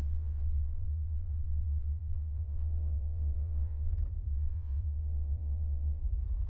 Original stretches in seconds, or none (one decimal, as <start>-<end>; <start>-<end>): 3.9-4.3; 6.0-6.5